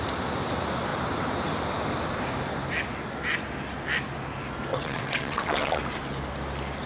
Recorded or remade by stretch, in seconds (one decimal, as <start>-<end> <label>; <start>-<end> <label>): 0.0-4.7 recorded; 4.7-5.8 remade; 5.8-6.9 recorded